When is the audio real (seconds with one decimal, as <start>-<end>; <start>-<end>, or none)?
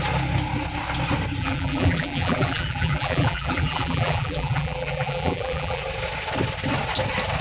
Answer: 0.0-1.4; 5.8-7.4